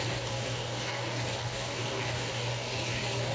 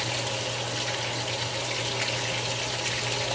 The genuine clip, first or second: second